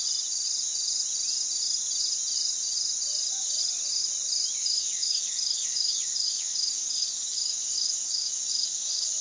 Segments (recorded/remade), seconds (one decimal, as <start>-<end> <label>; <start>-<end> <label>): 0.0-4.6 recorded; 4.6-9.2 remade